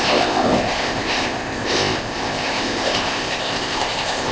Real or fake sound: fake